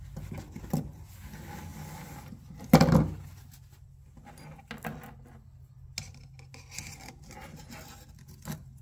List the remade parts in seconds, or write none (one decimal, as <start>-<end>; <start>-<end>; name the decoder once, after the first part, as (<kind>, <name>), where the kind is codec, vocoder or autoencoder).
none